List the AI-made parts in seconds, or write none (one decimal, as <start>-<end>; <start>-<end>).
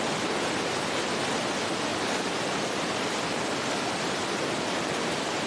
none